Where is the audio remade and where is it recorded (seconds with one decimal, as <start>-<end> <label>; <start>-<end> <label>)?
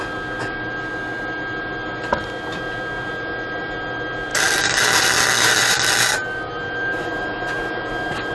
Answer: 0.0-8.3 recorded